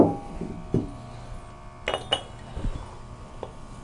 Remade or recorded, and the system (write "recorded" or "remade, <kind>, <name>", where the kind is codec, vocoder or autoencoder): recorded